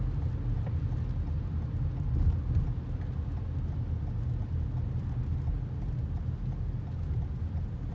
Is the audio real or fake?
real